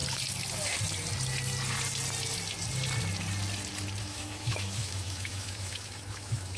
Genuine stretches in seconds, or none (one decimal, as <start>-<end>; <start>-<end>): 0.0-4.0